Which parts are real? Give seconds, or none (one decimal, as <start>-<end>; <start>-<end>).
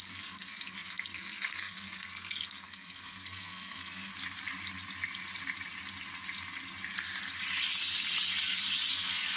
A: 4.1-8.9